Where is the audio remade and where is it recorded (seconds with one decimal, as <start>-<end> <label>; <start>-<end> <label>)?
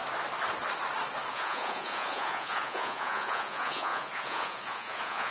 0.0-1.3 recorded; 1.3-5.3 remade